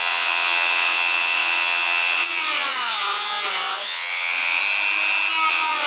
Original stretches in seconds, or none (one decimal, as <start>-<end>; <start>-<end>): 4.6-5.5